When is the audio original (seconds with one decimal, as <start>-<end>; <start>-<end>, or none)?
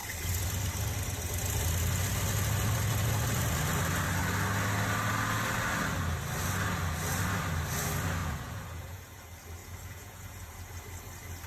0.0-8.2; 9.2-9.6; 10.7-11.5